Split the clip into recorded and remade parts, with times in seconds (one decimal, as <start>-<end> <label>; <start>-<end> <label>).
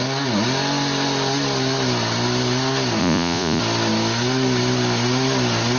0.0-3.0 recorded; 3.0-3.6 remade; 3.6-5.8 recorded